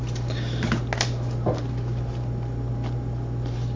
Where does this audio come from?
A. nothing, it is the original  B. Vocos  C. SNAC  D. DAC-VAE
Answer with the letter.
A